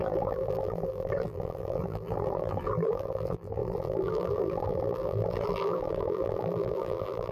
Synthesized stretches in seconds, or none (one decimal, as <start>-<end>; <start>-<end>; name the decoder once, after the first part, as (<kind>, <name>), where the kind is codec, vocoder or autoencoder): 0.0-7.3 (vocoder, BigVGAN v2)

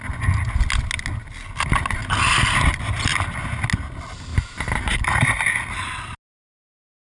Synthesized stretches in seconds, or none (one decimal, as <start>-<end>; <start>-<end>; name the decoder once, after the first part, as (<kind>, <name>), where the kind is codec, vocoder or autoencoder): 4.3-5.4 (vocoder, BigVGAN v2)

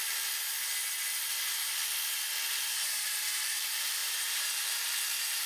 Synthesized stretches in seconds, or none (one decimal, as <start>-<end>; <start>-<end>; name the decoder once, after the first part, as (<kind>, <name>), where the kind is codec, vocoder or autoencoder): 2.5-5.5 (vocoder, BigVGAN v2)

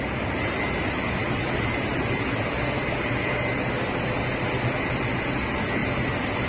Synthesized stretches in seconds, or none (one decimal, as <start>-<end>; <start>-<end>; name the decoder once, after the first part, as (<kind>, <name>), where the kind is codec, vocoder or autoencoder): 5.8-6.5 (vocoder, BigVGAN v2)

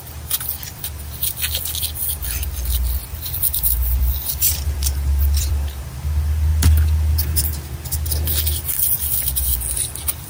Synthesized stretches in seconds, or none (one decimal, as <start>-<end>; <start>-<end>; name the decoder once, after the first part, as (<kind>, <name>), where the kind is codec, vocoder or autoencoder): 3.0-5.8 (vocoder, BigVGAN v2)